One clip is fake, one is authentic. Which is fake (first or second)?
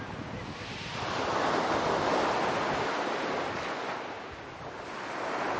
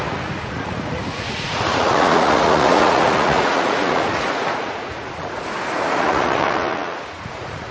second